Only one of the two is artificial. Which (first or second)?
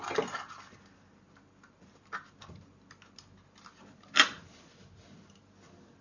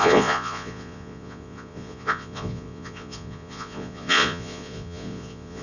second